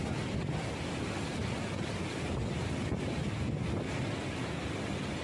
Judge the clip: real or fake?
real